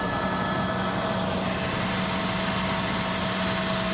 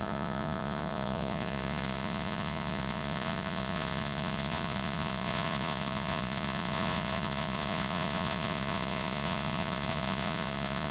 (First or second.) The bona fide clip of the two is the first